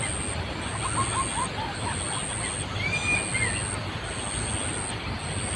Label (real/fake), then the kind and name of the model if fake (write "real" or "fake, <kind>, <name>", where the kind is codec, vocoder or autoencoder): real